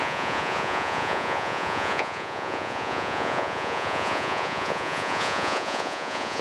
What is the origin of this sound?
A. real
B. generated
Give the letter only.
B